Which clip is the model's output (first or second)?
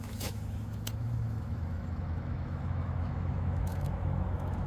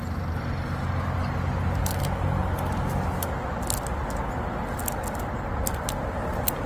first